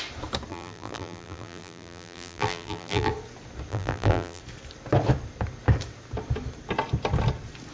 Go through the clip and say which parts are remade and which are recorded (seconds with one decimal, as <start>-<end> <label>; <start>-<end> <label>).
0.0-0.5 recorded; 0.5-3.1 remade; 3.1-3.7 recorded; 3.7-4.4 remade; 4.4-7.7 recorded

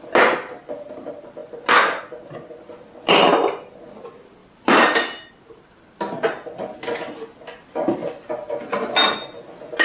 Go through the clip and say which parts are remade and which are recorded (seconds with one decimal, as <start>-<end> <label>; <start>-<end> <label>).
0.0-4.4 recorded; 4.4-5.8 remade; 5.8-9.8 recorded

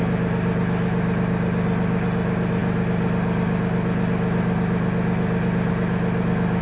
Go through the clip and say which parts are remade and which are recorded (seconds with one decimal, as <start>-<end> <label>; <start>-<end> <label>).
0.0-6.6 recorded

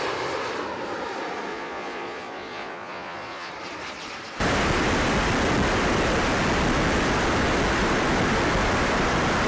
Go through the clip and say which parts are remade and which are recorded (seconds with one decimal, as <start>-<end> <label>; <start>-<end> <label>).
0.0-1.5 recorded; 1.5-3.5 remade; 3.5-9.5 recorded